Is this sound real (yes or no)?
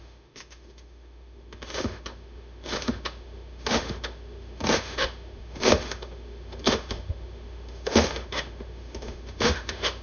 no